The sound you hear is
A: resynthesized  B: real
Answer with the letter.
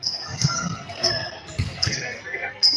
A